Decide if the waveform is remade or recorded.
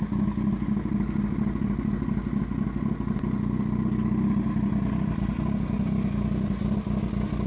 recorded